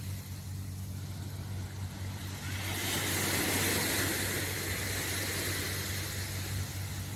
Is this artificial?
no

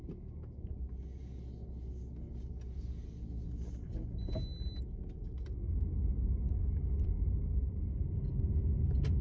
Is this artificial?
no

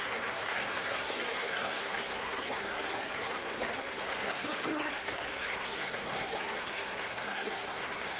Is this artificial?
yes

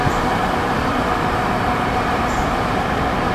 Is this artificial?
yes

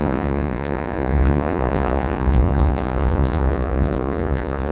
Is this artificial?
yes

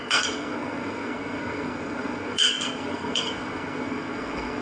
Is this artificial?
yes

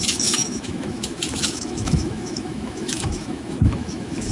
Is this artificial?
yes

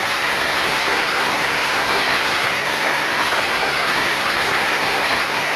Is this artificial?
yes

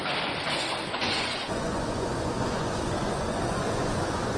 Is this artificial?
yes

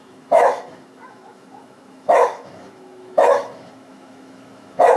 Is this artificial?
yes